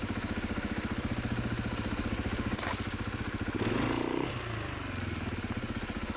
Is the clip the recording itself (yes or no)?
yes